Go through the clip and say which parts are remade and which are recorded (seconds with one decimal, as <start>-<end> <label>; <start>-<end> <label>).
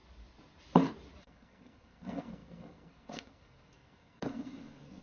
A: 0.0-1.2 recorded; 1.2-5.0 remade